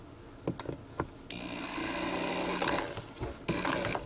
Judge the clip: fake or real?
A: real